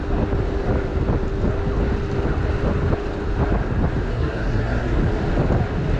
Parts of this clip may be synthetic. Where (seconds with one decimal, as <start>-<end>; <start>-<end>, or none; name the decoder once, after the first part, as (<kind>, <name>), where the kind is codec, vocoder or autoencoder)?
4.1-5.0 (codec, SNAC)